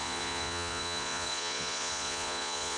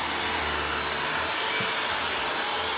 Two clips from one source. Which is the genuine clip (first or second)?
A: second